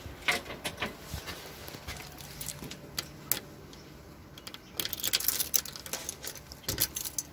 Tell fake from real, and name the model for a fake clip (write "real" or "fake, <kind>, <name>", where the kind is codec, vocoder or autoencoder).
real